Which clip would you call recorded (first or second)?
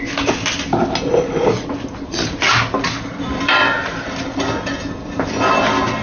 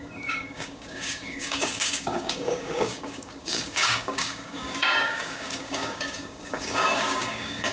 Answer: first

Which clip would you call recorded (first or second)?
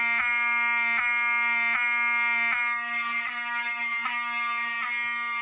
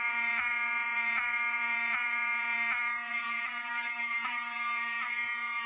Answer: first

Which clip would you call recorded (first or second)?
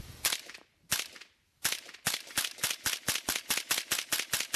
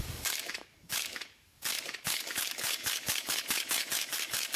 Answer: first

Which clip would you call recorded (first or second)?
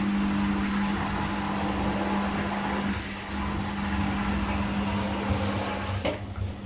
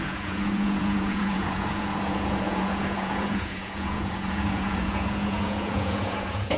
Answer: first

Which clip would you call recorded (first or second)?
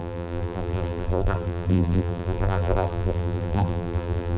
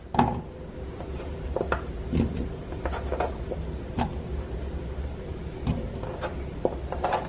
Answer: second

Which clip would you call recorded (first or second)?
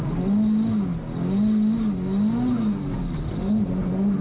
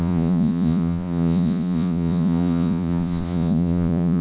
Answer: first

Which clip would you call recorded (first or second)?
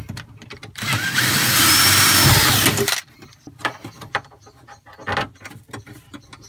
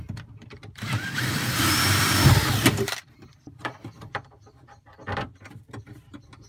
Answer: first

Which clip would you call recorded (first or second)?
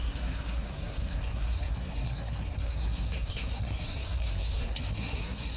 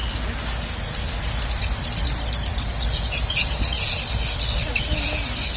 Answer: second